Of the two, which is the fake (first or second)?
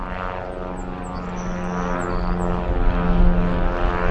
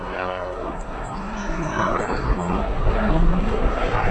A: second